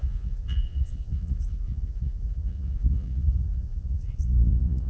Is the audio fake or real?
fake